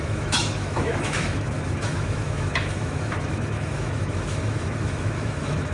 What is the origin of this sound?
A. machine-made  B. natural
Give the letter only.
A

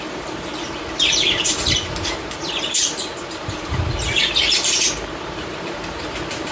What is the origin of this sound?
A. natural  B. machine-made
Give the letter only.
B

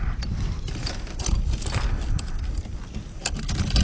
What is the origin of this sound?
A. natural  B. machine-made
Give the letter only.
A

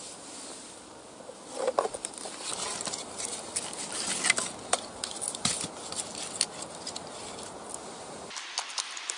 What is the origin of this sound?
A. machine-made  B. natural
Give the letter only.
B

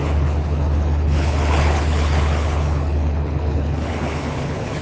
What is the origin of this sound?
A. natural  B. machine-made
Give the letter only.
B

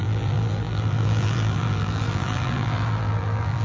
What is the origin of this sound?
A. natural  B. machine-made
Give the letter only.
B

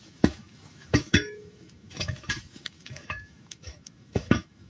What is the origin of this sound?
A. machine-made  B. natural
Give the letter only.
A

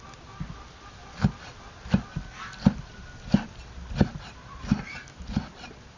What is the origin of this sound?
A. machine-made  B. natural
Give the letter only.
B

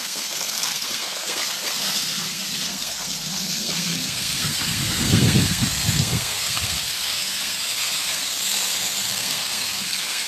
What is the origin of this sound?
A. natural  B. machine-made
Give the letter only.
B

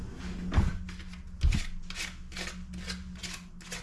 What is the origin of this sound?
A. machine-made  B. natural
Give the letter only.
B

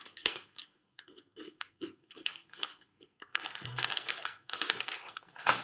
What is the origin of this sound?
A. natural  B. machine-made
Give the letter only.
B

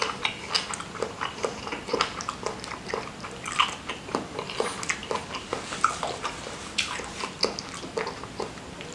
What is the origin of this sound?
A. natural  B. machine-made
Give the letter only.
A